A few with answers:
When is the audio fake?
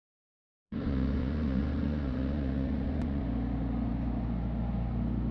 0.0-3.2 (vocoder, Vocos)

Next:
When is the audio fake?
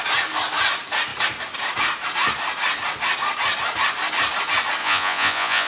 4.8-5.7 (vocoder, Vocos)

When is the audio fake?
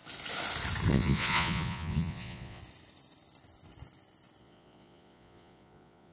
0.9-2.6 (vocoder, Vocos); 4.4-6.1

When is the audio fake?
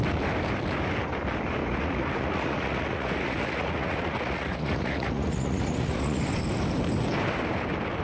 1.6-6.2 (vocoder, Vocos)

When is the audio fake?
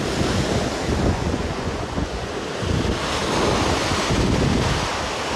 1.1-2.3 (vocoder, Vocos)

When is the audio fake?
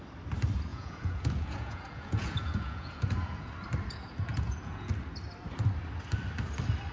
0.7-3.5 (vocoder, Vocos); 4.3-4.9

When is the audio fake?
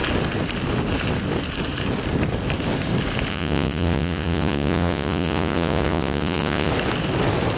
3.3-6.7 (vocoder, Vocos)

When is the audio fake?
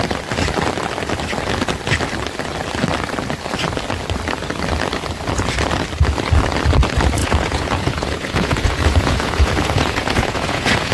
7.2-10.9 (vocoder, Vocos)